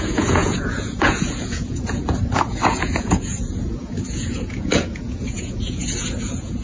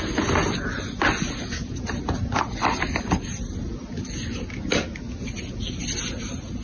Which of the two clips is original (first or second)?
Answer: second